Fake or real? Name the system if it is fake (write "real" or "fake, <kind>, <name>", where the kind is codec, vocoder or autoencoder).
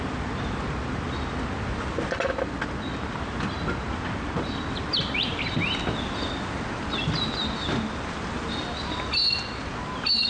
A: real